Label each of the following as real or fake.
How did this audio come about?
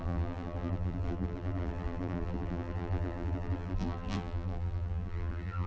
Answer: fake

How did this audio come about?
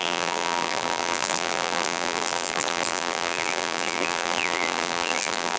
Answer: fake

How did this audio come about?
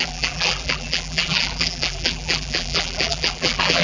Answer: fake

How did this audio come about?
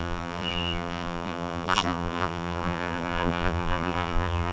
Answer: fake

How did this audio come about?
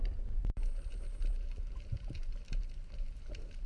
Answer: fake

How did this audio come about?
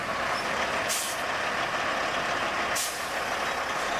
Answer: real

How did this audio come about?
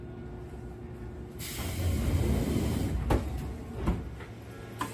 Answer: real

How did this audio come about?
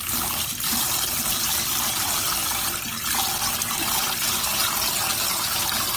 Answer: fake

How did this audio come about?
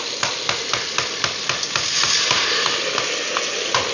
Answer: real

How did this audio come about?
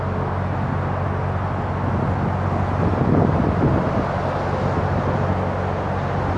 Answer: real